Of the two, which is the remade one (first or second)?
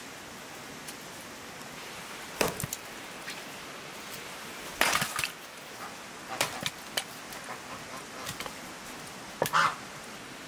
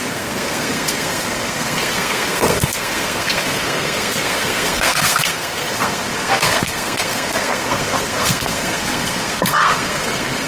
second